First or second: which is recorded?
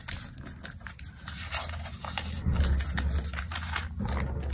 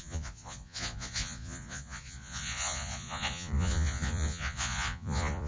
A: first